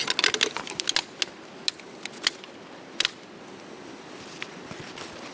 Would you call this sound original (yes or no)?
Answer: yes